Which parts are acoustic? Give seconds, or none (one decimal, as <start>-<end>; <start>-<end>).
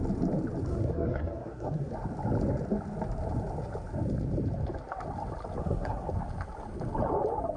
0.0-0.7; 1.9-5.6; 6.1-7.6